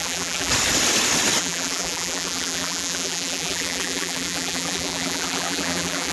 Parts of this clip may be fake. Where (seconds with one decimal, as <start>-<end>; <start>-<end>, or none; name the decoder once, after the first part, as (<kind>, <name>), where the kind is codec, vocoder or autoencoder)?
0.0-0.5 (vocoder, BigVGAN v2); 1.4-6.1